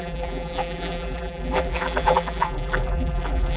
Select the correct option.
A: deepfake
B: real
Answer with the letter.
A